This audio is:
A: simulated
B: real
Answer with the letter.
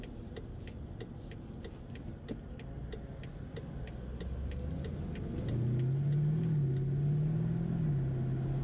B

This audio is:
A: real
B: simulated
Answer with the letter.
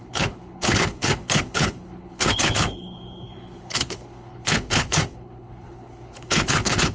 B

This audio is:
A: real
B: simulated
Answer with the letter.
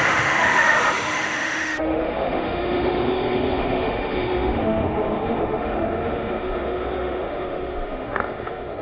B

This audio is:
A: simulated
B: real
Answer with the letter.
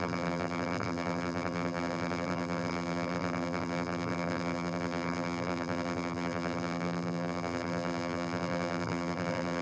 A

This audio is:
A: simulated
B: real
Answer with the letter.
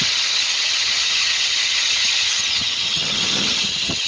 A